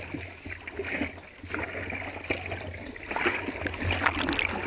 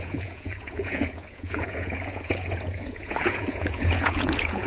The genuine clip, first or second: first